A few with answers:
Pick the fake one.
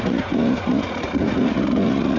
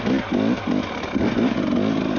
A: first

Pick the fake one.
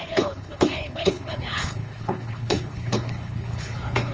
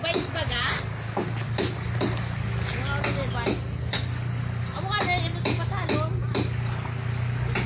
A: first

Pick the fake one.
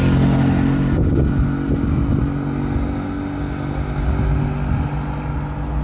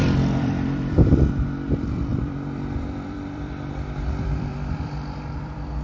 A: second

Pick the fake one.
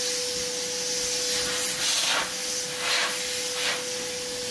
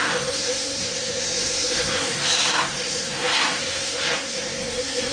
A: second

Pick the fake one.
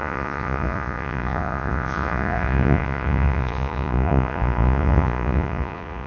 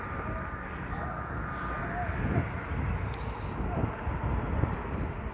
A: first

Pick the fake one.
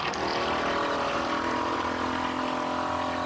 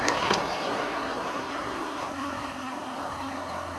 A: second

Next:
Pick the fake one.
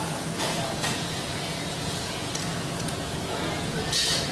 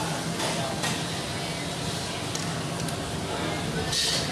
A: first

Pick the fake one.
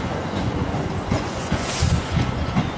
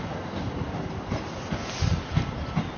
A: first